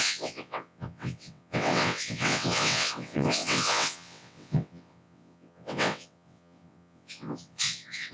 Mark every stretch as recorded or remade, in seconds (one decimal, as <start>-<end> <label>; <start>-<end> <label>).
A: 0.0-8.1 remade